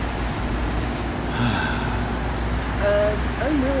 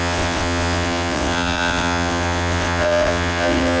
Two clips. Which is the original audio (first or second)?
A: first